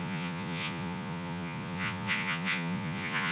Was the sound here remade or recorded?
remade